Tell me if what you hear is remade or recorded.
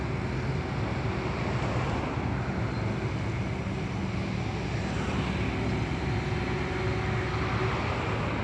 recorded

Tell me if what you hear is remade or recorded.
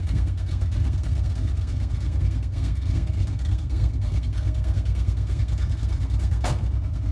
remade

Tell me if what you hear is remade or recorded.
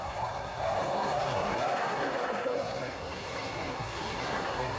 remade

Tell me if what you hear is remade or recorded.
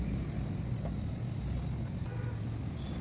recorded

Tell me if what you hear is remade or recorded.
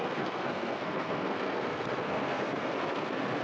remade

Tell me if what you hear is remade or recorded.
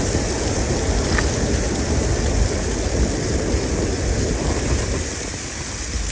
recorded